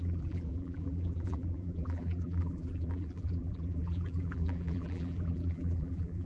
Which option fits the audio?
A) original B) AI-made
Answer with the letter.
B